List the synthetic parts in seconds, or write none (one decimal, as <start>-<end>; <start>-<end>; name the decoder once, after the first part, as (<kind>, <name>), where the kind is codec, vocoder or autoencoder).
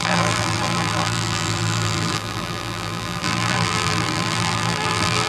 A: 0.0-5.3 (vocoder, BigVGAN v2)